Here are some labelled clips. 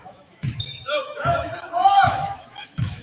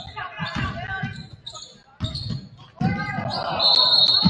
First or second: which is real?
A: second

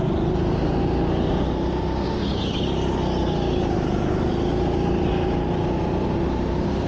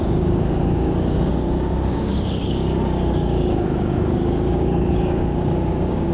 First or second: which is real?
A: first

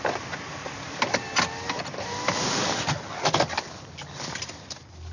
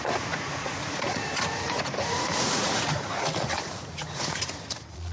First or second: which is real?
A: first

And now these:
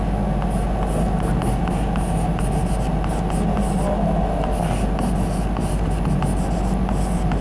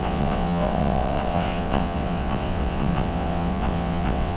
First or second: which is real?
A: first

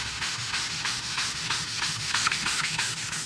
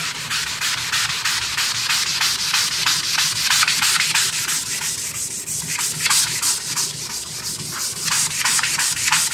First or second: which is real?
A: second